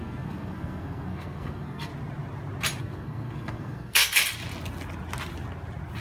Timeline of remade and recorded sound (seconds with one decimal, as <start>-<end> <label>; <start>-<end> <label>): 0.0-1.9 remade; 1.9-2.8 recorded; 2.8-4.2 remade; 4.2-6.0 recorded